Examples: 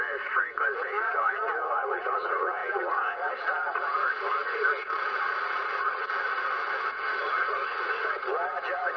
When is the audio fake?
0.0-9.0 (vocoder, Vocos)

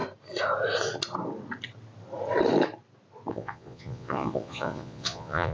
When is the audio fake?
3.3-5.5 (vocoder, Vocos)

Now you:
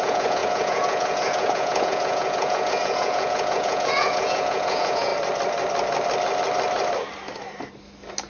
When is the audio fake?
0.0-5.1 (vocoder, Vocos)

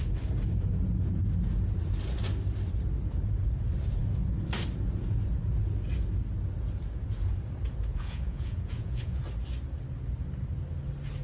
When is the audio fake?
7.9-9.2 (vocoder, Vocos)

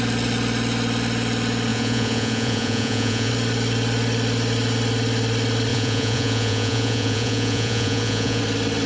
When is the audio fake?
1.7-3.3 (vocoder, Vocos); 5.7-8.4